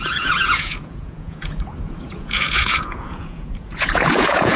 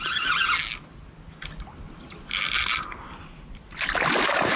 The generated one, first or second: first